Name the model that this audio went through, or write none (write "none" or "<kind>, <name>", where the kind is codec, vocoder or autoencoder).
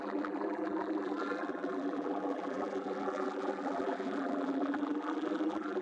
vocoder, BigVGAN v2